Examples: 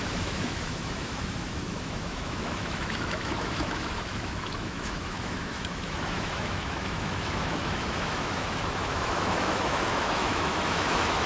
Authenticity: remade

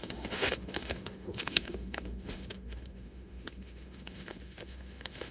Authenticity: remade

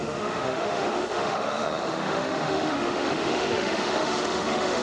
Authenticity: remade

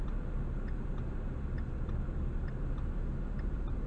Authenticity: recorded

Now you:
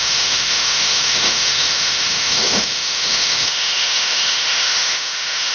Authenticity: remade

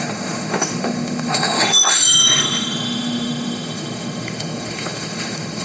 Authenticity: remade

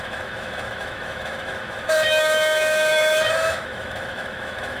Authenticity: remade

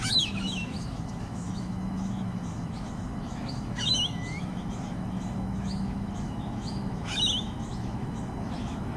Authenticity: remade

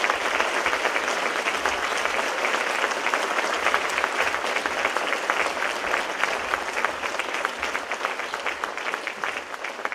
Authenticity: recorded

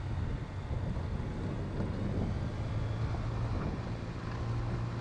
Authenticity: recorded